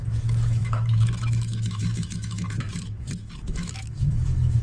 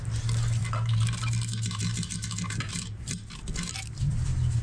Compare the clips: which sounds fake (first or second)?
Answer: first